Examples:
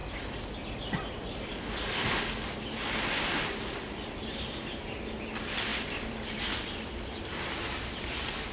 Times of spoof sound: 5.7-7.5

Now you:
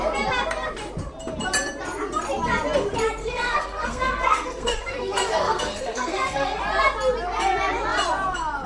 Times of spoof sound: 3.2-6.6

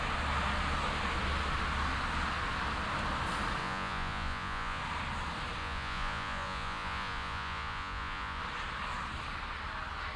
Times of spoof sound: 3.6-4.8; 5.6-8.4

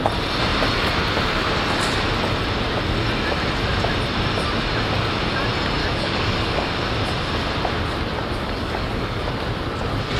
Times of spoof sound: 5.8-6.7; 8.4-9.3

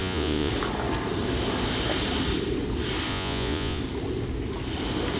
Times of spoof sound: 0.0-0.5; 3.1-3.8

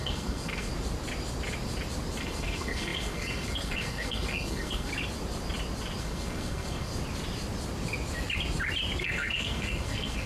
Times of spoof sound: 0.0-0.7; 2.2-4.9; 6.0-6.9; 9.0-10.3

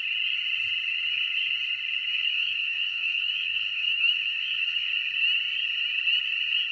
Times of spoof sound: 0.9-1.5; 2.0-4.9